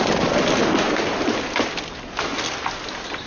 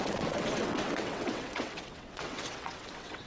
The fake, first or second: second